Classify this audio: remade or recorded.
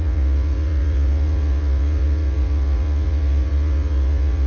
remade